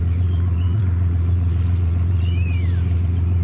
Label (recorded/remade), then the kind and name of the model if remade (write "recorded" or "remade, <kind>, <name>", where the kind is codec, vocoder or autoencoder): remade, vocoder, Vocos